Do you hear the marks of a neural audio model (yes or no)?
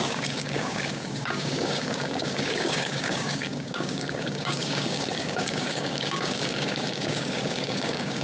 yes